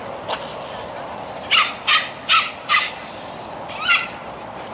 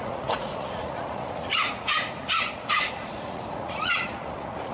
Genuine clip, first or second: first